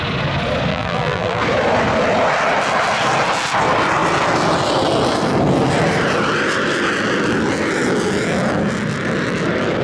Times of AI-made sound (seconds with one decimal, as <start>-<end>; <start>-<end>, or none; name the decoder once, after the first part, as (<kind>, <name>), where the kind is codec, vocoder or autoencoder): 0.7-1.4 (vocoder, BigVGAN v2)